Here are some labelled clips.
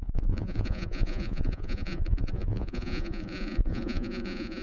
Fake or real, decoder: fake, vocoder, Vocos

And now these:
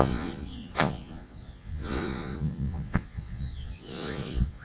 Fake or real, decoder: fake, vocoder, Vocos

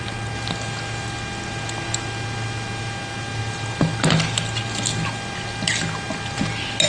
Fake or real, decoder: real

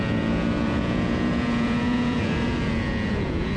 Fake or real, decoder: fake, vocoder, Vocos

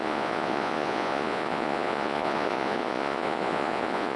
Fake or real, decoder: fake, vocoder, Vocos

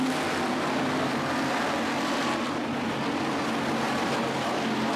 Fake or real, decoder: real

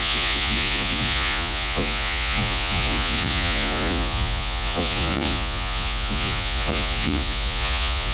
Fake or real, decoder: fake, vocoder, Vocos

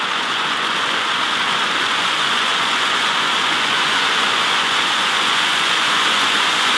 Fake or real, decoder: fake, vocoder, Vocos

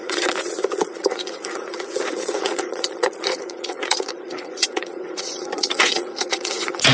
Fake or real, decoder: fake, vocoder, Vocos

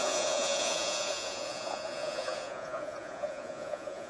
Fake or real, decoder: fake, vocoder, Vocos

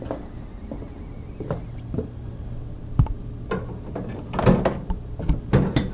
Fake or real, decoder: real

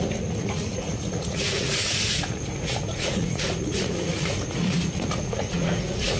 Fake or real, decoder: fake, vocoder, Vocos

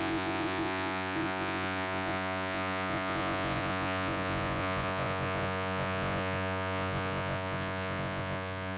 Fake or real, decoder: fake, vocoder, Vocos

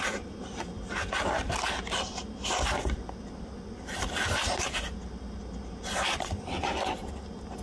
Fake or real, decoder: real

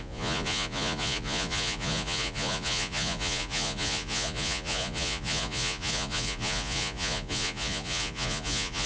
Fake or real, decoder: fake, vocoder, Vocos